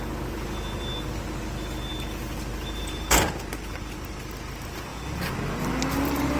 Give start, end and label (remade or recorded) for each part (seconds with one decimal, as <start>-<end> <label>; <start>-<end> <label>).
0.0-6.4 recorded